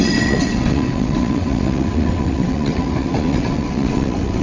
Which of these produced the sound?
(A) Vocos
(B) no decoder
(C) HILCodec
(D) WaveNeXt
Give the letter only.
D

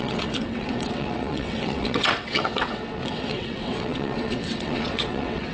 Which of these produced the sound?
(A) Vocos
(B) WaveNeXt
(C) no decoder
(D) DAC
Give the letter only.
B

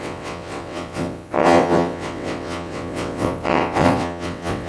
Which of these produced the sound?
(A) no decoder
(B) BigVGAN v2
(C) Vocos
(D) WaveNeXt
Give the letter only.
D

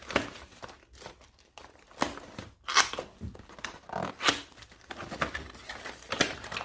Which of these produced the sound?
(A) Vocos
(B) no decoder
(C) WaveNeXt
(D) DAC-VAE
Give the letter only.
B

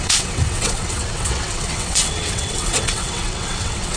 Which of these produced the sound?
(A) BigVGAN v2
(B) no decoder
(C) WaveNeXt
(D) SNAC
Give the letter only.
C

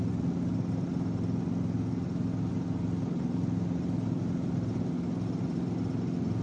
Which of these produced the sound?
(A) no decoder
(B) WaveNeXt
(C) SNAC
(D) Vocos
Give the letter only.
A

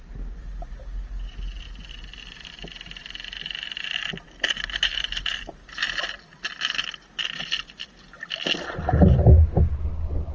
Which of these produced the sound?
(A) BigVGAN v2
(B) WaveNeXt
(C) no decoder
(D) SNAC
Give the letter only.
C